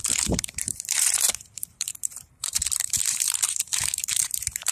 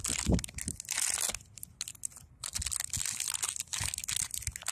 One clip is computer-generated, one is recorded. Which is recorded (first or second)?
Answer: second